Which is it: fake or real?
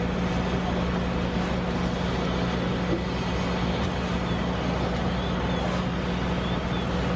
real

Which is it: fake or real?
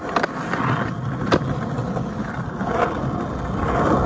real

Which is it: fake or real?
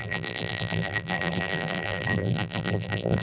fake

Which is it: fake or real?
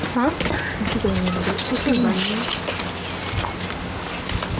real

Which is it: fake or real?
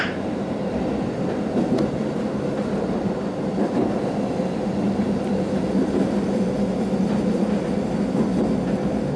real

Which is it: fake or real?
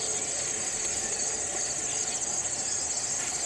real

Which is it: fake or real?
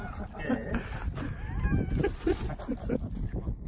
real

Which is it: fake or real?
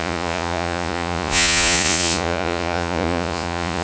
fake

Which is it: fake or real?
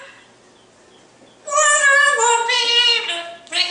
real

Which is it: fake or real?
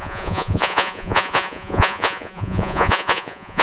fake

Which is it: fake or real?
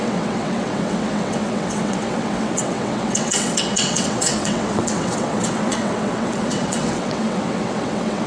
fake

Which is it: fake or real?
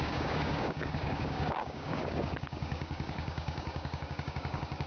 fake